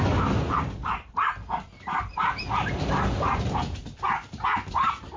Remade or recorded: recorded